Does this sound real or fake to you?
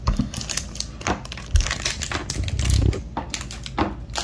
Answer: real